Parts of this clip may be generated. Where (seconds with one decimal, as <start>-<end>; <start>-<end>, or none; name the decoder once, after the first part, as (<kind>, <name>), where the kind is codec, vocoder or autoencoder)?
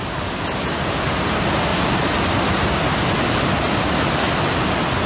none